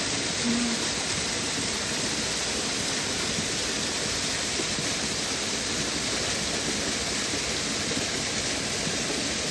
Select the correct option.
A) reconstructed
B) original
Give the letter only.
B